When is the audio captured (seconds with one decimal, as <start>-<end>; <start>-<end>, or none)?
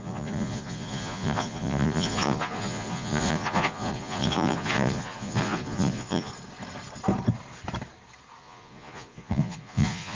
6.3-8.4